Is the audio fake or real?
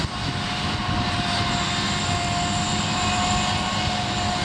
real